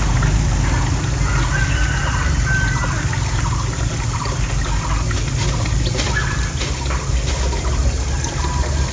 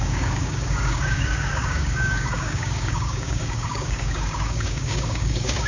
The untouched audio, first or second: first